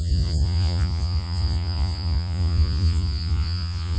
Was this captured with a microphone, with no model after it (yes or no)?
no